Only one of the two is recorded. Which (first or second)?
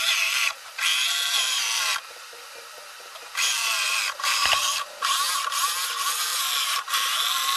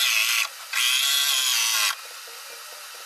second